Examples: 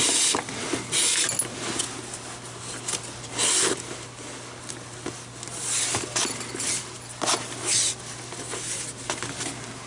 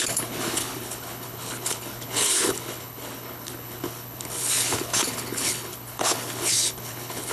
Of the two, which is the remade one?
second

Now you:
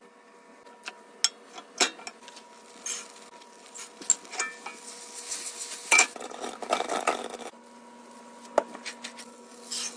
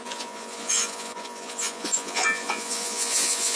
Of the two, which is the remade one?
second